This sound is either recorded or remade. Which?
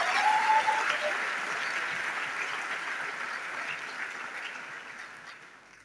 recorded